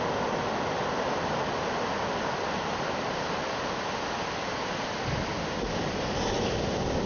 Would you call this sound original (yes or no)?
yes